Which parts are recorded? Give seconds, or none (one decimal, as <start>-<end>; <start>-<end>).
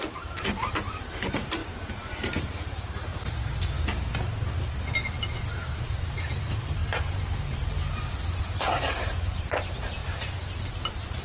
1.6-2.4; 3.1-4.5; 10.0-10.7